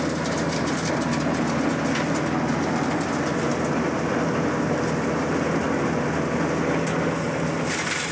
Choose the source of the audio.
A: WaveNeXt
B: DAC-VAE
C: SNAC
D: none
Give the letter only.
D